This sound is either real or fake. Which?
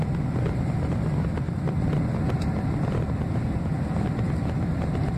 real